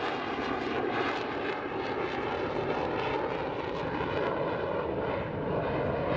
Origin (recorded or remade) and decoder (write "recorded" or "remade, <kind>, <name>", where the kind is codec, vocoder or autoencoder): recorded